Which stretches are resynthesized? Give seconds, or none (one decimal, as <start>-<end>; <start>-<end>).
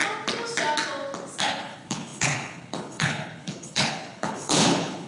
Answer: 1.4-5.1